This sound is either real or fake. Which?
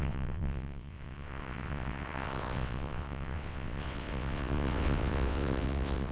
fake